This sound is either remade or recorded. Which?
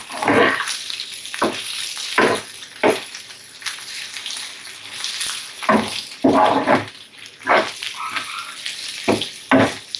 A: recorded